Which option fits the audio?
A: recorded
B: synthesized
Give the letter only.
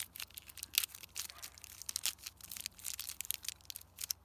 A